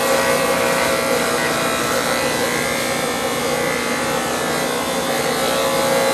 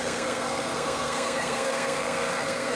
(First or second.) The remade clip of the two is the second